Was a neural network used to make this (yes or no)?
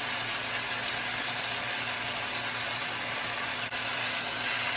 no